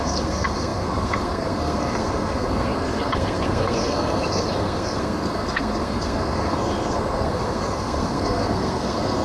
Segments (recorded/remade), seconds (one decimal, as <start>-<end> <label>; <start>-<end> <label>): 0.0-9.2 remade